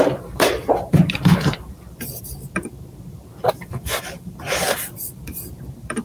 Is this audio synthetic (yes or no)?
yes